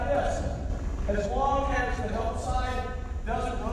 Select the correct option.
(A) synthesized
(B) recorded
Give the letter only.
B